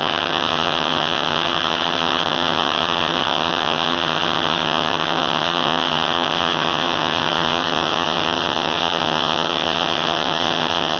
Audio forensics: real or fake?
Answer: fake